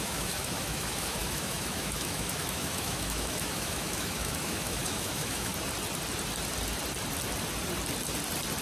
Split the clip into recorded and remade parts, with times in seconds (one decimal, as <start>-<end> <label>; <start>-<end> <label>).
0.0-5.5 remade; 5.5-8.6 recorded